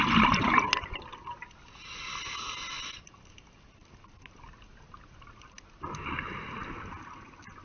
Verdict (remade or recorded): recorded